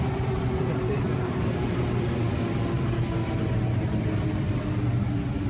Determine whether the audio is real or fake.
real